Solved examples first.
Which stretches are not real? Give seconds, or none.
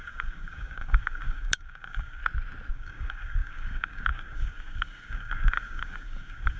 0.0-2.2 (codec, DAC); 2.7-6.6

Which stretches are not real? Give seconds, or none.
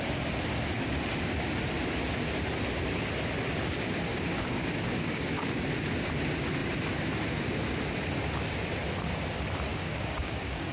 4.1-5.6 (codec, DAC); 9.7-10.7